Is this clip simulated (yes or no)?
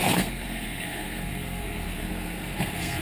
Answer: yes